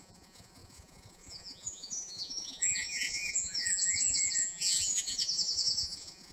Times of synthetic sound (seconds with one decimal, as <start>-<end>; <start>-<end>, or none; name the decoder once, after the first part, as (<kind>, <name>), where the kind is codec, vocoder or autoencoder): 0.0-6.3 (vocoder, Vocos)

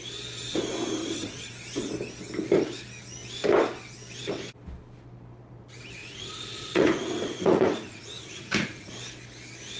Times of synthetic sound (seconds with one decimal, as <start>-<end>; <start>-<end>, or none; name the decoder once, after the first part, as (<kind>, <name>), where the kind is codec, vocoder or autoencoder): 1.0-1.5 (vocoder, Vocos); 6.0-8.9

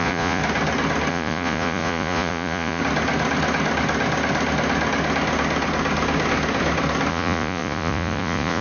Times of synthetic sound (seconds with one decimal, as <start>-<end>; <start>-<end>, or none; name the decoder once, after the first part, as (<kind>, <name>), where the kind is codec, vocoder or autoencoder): 0.0-0.4 (vocoder, Vocos); 1.1-2.8; 7.1-8.6

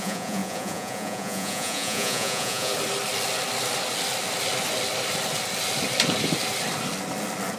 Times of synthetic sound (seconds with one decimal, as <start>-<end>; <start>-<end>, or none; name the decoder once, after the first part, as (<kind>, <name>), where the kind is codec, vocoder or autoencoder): 0.0-2.7 (vocoder, Vocos)

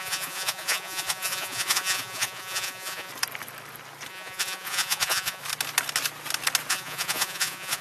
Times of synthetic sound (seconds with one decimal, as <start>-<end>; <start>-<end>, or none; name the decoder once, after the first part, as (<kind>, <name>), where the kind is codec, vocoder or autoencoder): 0.0-3.1 (vocoder, Vocos); 4.1-5.4; 6.7-7.8

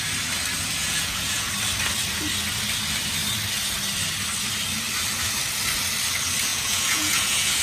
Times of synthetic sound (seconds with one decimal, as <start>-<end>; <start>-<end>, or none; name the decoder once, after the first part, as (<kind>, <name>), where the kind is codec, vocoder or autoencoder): 0.8-1.5 (vocoder, Vocos); 6.5-7.6

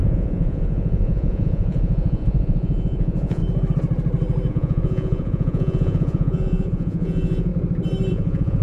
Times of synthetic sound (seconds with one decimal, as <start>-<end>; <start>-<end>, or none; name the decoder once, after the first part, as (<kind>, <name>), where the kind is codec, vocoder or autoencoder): 0.0-3.4 (vocoder, Vocos); 4.5-7.5; 8.1-8.6